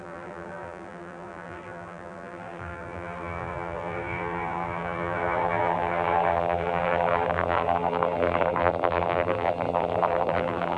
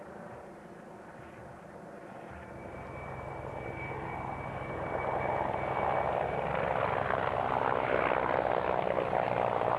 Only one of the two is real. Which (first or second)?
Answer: second